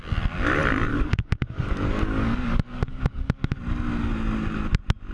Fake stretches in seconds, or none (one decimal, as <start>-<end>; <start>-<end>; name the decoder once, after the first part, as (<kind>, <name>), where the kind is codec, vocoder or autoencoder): 0.9-3.6 (codec, DAC)